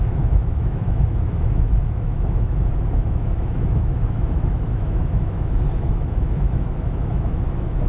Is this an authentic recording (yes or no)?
no